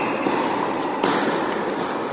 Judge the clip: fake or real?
fake